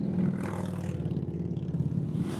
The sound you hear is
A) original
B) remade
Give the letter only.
A